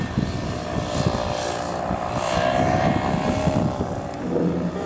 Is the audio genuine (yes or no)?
yes